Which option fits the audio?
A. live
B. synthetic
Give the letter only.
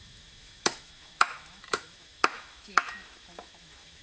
B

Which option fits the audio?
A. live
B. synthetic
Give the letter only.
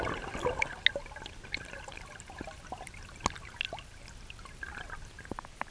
A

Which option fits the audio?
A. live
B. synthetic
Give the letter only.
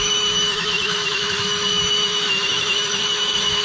B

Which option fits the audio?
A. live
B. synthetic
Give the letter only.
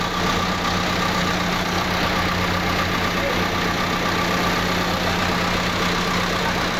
A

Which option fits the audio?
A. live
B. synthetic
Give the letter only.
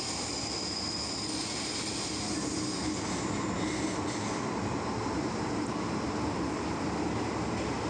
A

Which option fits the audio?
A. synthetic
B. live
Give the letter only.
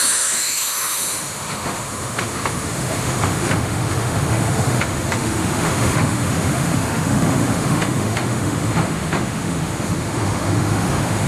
A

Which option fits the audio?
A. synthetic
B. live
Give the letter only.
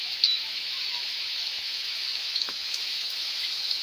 A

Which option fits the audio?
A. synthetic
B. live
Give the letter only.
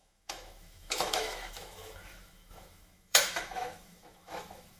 A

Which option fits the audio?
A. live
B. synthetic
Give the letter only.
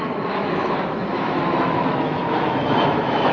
B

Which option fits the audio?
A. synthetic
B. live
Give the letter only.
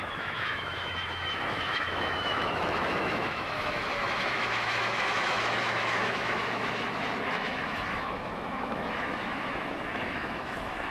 A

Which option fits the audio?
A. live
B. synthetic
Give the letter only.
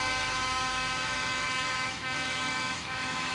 B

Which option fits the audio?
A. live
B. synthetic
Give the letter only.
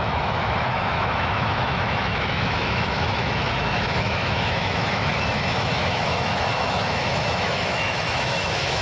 B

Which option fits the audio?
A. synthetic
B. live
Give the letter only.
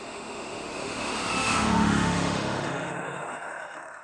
A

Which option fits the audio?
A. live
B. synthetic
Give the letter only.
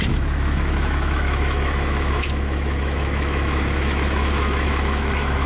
B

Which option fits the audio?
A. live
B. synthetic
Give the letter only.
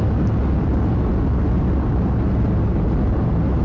A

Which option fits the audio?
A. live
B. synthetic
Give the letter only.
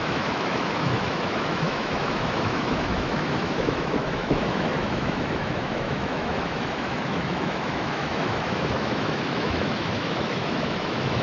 B